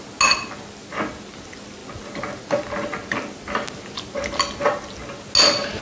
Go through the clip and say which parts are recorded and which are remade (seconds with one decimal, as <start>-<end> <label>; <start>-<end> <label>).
0.0-5.8 recorded